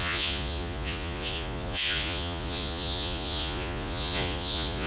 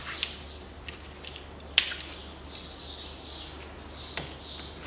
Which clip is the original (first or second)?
second